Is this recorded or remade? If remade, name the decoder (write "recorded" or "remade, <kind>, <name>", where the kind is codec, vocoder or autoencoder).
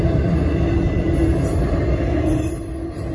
recorded